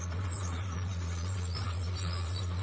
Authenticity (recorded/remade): remade